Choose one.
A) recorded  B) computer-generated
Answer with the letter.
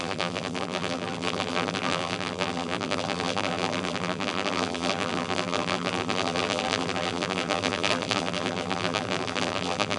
B